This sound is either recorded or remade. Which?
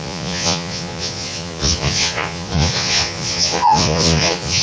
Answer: remade